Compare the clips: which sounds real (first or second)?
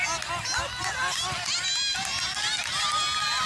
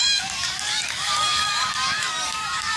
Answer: first